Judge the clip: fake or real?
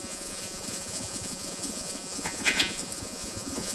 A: fake